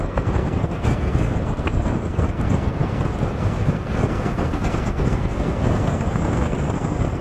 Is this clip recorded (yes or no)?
no